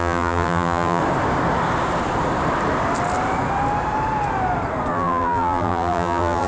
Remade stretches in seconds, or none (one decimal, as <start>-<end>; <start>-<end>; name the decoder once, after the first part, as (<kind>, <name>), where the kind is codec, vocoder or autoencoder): 0.0-1.0 (vocoder, BigVGAN v2); 4.9-6.5

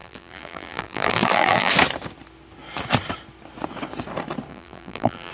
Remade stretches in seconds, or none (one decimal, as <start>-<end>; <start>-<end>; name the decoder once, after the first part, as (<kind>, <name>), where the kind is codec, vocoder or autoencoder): 0.0-1.7 (vocoder, BigVGAN v2); 4.5-5.3

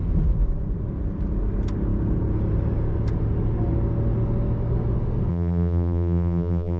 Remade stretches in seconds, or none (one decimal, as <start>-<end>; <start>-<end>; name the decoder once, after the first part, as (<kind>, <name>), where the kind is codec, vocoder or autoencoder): 5.3-6.8 (vocoder, BigVGAN v2)

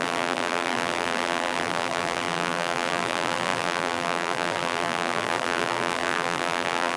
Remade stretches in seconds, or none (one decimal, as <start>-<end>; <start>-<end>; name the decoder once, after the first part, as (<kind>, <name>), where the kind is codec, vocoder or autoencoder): 0.0-7.0 (vocoder, BigVGAN v2)

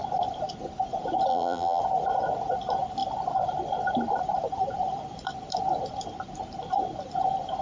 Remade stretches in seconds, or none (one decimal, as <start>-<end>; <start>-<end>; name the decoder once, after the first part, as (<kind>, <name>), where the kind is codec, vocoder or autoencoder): 1.3-1.8 (vocoder, BigVGAN v2)

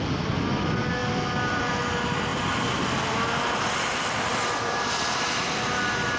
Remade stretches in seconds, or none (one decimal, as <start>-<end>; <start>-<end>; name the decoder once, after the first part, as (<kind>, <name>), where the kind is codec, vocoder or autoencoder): 2.3-3.0 (vocoder, BigVGAN v2)